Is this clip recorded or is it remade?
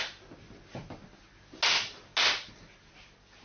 recorded